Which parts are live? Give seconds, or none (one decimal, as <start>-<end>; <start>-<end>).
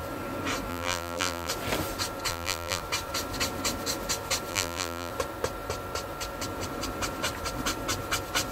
0.0-0.7; 1.5-2.3; 2.8-4.5; 5.1-8.5